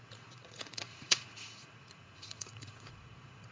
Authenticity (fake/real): fake